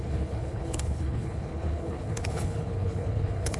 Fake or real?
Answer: fake